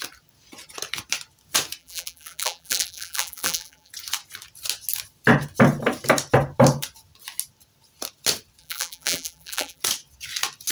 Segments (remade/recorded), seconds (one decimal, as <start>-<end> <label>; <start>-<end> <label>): 0.0-1.8 recorded; 1.8-3.9 remade; 3.9-8.6 recorded; 8.6-9.8 remade; 9.8-10.7 recorded